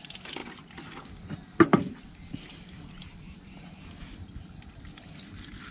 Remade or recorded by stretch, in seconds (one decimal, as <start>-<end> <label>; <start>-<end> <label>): 0.0-5.7 recorded